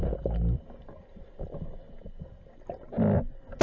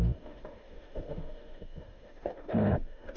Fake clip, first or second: second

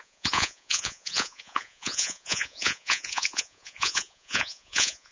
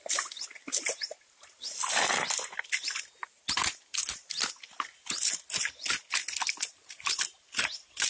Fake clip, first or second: first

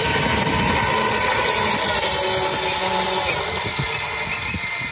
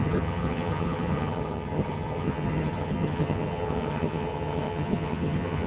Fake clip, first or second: second